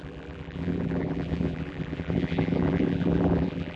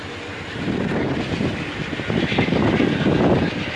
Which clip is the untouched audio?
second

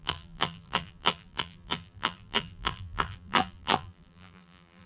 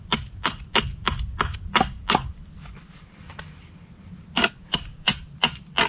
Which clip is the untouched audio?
second